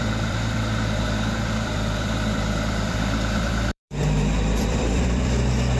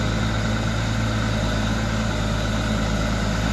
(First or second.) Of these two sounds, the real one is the second